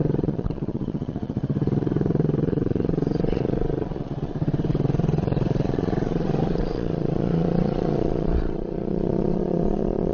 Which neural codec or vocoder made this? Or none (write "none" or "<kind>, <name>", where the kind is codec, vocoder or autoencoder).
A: vocoder, Vocos